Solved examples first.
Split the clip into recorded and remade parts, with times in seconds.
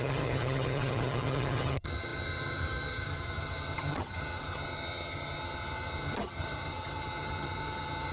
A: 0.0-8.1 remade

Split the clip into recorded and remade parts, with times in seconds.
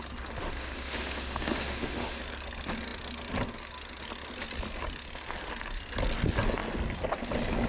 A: 0.0-0.4 recorded; 0.4-2.2 remade; 2.2-7.7 recorded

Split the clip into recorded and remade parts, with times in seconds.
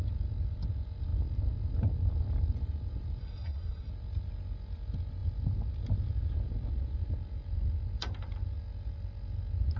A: 0.0-3.2 recorded; 3.2-3.9 remade; 3.9-9.8 recorded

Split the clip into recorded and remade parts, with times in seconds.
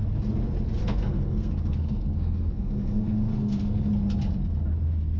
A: 0.0-0.8 recorded; 0.8-3.9 remade; 3.9-5.2 recorded